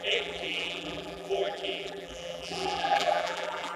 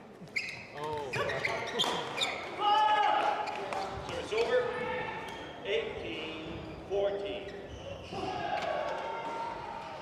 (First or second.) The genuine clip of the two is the second